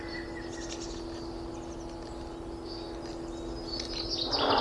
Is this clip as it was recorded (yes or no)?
yes